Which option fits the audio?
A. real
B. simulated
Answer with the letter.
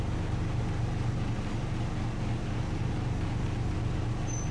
A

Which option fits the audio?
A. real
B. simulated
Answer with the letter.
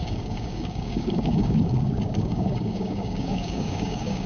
B